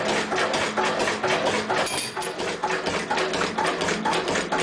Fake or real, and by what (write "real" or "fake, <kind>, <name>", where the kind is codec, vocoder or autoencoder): real